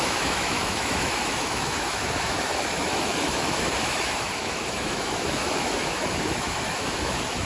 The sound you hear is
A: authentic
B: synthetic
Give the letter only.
B